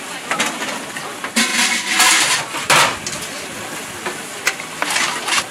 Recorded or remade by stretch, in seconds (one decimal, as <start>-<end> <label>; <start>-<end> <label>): 0.0-5.5 recorded